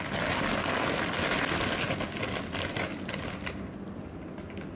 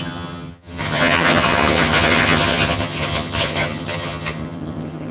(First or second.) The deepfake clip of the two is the second